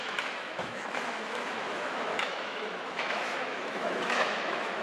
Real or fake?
fake